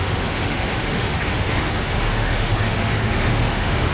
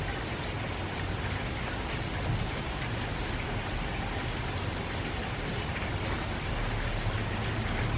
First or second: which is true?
second